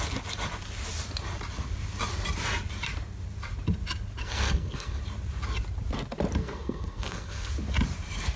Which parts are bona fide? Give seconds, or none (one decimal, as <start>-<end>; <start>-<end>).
0.0-4.2; 5.0-6.4; 7.5-8.4